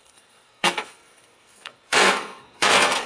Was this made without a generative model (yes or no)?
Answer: no